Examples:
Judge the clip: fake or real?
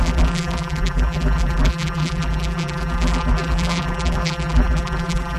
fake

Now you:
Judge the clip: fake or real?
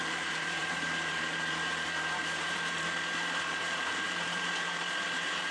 fake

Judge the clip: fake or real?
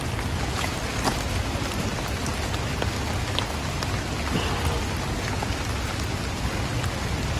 real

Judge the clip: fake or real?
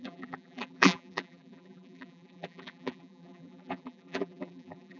fake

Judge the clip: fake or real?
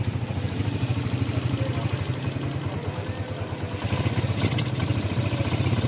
real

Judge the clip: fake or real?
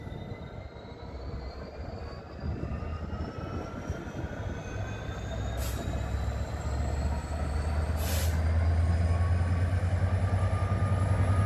real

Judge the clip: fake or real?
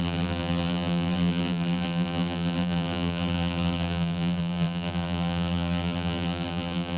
fake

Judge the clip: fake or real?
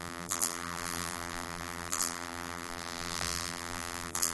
fake